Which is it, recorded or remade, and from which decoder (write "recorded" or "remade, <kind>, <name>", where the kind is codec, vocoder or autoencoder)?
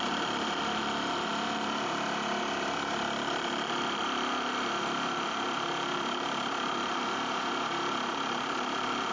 remade, vocoder, BigVGAN v2